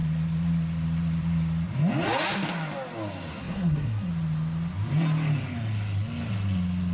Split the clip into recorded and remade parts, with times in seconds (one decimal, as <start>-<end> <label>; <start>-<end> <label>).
0.0-3.4 recorded; 3.4-4.1 remade; 4.1-6.9 recorded